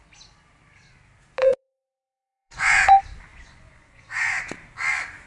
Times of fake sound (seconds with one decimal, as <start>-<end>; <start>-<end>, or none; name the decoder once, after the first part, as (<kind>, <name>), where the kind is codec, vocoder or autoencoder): 1.4-2.9 (vocoder, Vocos); 3.3-4.4